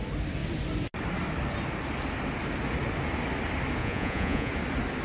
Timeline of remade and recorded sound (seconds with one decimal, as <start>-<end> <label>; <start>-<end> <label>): 0.0-3.8 recorded; 3.8-4.5 remade; 4.5-5.0 recorded